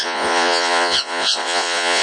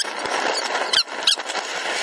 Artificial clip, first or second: first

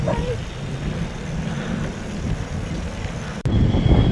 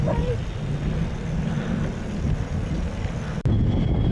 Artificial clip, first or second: first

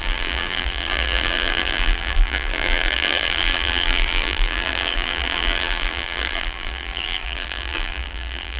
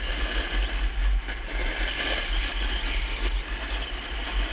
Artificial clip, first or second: first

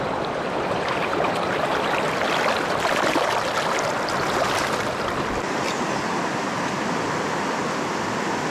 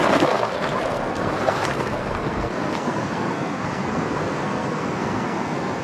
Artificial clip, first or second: second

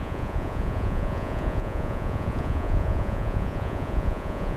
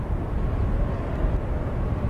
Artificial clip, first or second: first